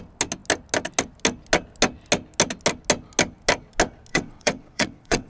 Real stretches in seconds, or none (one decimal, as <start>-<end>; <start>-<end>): 0.0-4.1